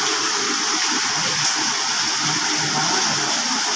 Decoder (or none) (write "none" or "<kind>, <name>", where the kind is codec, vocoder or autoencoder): none